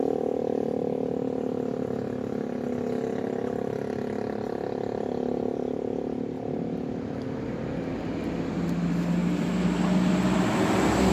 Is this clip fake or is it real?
real